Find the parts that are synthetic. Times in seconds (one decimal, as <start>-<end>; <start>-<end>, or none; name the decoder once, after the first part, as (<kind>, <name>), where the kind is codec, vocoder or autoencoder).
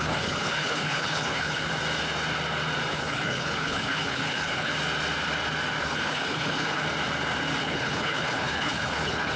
0.0-1.7 (codec, HILCodec); 2.9-4.7; 5.8-6.8; 7.6-9.4